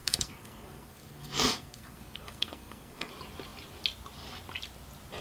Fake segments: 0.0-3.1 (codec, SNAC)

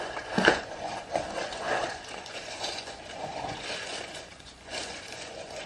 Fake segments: 0.0-5.7 (vocoder, Vocos)

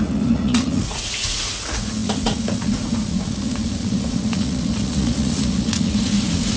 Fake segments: 0.0-6.6 (vocoder, Vocos)

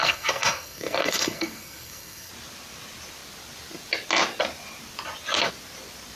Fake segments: 0.0-2.3 (codec, SNAC)

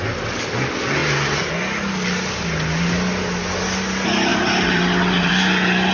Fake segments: 4.3-5.3 (vocoder, BigVGAN v2)

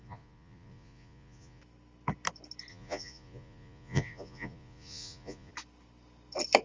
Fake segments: 0.0-1.6 (vocoder, Vocos); 2.7-5.5